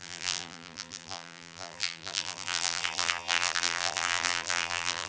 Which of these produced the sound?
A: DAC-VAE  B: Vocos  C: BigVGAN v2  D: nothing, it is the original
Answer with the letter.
C